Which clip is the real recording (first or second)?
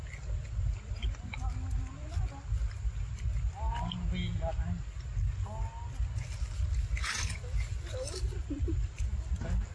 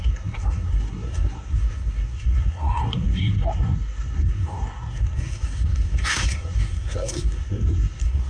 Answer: first